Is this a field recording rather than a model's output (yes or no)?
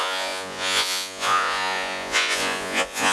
no